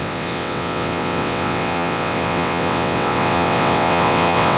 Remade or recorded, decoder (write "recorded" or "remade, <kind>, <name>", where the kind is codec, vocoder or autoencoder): remade, vocoder, WaveNeXt